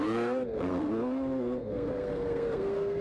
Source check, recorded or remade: remade